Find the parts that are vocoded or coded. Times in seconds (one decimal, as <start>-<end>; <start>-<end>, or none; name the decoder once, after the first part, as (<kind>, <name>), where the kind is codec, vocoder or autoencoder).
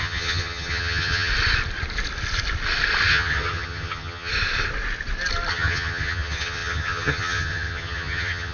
0.0-1.3 (vocoder, HiFi-GAN); 3.1-4.3; 5.5-8.5